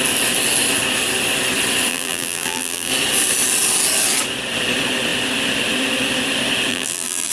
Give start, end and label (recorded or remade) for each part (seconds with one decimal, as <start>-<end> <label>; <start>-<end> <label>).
0.0-1.9 recorded; 1.9-2.9 remade; 2.9-6.7 recorded; 6.7-7.3 remade